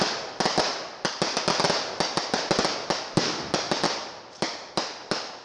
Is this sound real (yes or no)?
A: yes